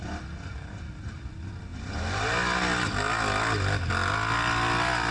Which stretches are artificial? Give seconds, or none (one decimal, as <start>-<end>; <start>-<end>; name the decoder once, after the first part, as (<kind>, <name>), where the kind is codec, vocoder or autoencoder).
none